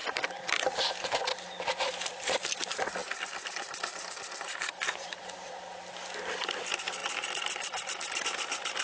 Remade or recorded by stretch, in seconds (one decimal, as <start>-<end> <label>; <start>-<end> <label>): 0.0-0.9 remade; 0.9-3.0 recorded; 3.0-5.2 remade; 5.2-7.0 recorded; 7.0-8.2 remade; 8.2-8.8 recorded